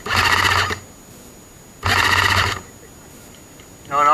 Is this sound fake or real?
real